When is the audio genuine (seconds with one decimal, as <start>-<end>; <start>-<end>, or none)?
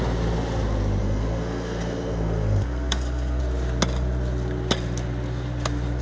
0.0-1.0; 3.4-6.0